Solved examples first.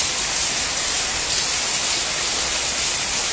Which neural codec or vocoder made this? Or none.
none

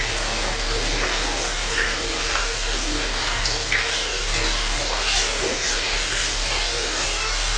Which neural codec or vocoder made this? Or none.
codec, DAC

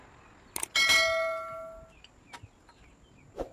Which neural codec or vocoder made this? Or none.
none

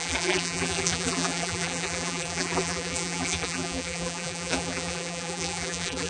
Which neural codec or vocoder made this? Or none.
vocoder, BigVGAN v2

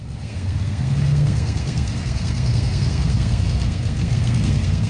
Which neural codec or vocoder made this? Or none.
codec, SNAC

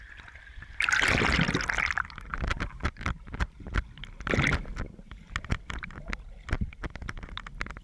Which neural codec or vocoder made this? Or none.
none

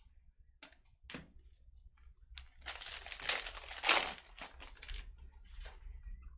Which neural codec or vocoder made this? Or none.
none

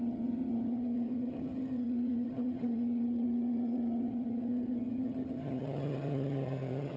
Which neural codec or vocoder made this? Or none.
vocoder, HiFi-GAN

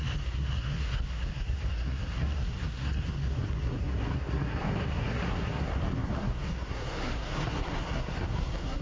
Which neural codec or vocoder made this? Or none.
codec, SNAC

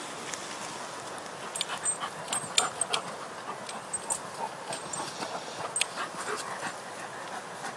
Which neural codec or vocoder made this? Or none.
none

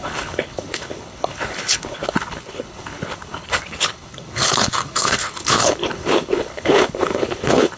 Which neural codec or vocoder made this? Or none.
codec, HILCodec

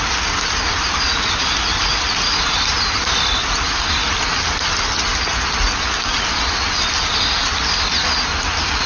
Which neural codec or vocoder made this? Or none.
none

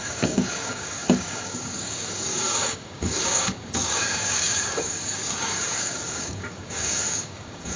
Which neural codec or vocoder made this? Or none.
codec, DAC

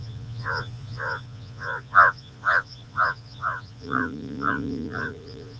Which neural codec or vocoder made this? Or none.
vocoder, Vocos